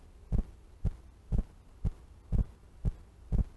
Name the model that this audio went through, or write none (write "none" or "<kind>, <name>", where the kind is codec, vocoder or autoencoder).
none